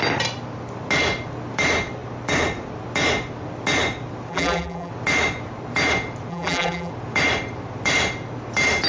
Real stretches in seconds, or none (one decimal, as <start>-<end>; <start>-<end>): 0.0-4.3; 4.9-6.3; 6.9-8.9